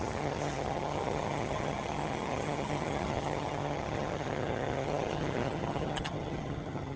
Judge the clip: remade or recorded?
remade